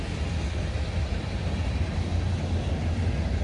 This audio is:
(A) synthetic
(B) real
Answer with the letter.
B